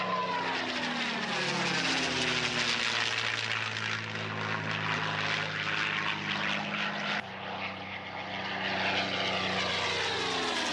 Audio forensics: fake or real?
real